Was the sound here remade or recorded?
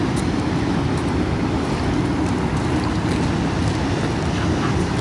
recorded